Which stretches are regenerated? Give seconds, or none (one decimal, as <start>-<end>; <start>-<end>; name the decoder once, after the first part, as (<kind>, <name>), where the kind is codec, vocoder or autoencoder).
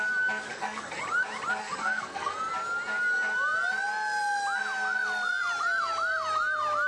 0.5-1.0 (codec, SNAC); 1.6-2.3